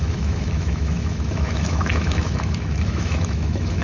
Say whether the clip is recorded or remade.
remade